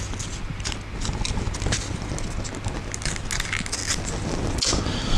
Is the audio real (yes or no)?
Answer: yes